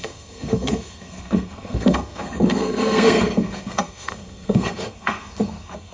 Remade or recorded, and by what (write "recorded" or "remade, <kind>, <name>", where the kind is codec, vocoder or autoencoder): remade, codec, SNAC